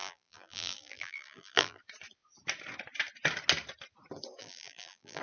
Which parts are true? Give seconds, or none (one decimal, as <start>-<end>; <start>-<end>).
1.8-4.4